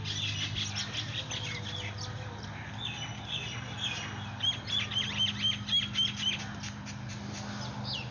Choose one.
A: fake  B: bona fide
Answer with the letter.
B